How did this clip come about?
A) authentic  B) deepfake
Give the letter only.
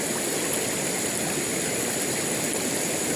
A